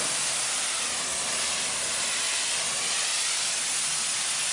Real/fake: real